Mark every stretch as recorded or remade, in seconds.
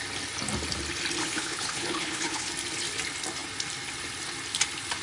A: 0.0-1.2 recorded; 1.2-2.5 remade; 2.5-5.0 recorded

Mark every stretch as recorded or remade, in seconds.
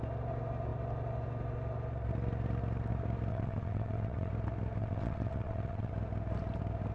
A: 0.0-3.3 recorded; 3.3-4.3 remade; 4.3-4.8 recorded; 4.8-5.9 remade; 5.9-6.9 recorded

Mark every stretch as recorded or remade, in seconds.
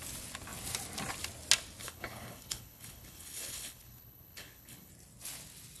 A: 0.0-1.8 recorded; 1.8-4.9 remade; 4.9-5.8 recorded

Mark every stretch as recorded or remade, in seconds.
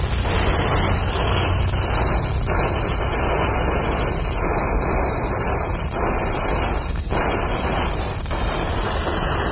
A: 0.0-9.5 recorded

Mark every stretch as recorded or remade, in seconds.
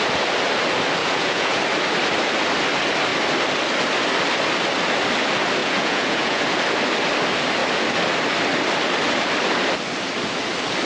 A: 0.0-1.0 recorded; 1.0-1.6 remade; 1.6-5.6 recorded; 5.6-6.4 remade; 6.4-10.9 recorded